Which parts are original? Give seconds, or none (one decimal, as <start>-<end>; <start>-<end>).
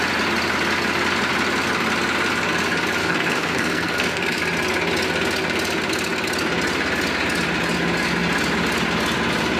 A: 0.0-3.0; 4.4-9.6